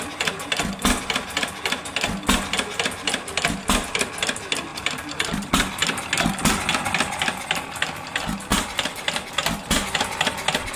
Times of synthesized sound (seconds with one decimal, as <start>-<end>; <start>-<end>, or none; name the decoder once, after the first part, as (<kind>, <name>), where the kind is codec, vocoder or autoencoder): 4.7-5.5 (vocoder, BigVGAN v2); 8.5-9.1

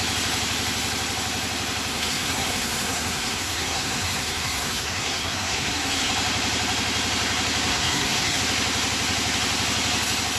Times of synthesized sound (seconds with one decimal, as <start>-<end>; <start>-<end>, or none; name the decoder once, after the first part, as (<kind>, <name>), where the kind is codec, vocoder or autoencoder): 1.9-6.1 (codec, SNAC); 7.7-8.4

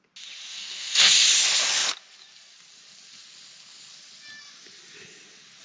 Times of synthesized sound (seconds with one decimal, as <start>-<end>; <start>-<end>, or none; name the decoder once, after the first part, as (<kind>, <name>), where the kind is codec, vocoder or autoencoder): 0.5-1.1 (codec, SNAC)

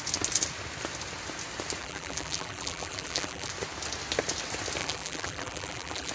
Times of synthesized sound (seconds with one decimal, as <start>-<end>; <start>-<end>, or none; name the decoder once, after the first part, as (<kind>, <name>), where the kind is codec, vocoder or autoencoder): 1.8-3.5 (vocoder, BigVGAN v2); 4.8-6.1

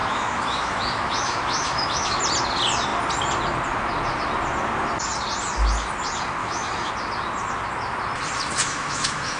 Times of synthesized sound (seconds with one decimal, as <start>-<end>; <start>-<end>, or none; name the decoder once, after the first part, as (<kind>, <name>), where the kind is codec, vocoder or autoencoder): 0.0-2.2 (autoencoder, DAC-VAE); 6.4-6.9; 8.6-9.4

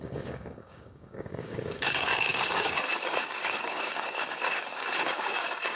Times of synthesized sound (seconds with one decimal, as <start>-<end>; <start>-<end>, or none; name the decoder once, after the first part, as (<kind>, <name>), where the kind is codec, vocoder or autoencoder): 0.0-5.8 (codec, DAC)

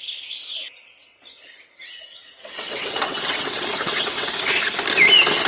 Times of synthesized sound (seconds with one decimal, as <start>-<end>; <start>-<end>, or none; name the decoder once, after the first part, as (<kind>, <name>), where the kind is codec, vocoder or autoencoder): 1.0-4.3 (vocoder, WaveNeXt)